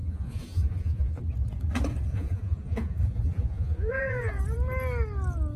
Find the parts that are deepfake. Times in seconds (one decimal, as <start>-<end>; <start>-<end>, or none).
0.0-1.2; 2.1-4.4